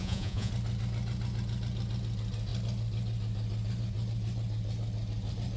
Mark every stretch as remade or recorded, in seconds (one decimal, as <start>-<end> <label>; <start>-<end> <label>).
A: 0.0-0.5 remade; 0.5-5.6 recorded